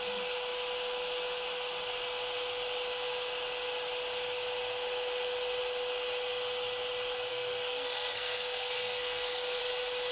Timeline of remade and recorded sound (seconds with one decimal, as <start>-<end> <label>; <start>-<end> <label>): 0.0-7.3 recorded; 7.3-9.6 remade; 9.6-10.1 recorded